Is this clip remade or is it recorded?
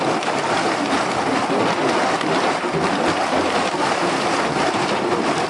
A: remade